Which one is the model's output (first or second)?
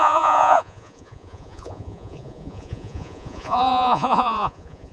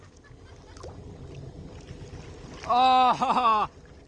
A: first